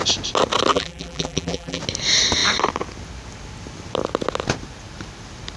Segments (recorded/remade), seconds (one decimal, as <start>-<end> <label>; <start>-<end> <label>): 0.0-0.7 recorded; 0.7-1.8 remade; 1.8-5.6 recorded